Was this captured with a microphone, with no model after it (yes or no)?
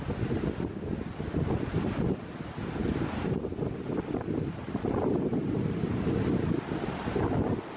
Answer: yes